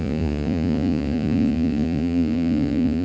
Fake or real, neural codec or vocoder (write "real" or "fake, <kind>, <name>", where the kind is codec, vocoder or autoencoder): fake, vocoder, Vocos